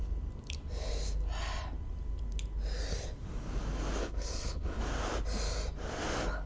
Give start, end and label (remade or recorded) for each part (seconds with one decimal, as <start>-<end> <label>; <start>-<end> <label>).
0.0-4.0 recorded; 4.0-4.8 remade; 4.8-6.5 recorded